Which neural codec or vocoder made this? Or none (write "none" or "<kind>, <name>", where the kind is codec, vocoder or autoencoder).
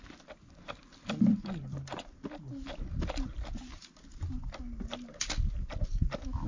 none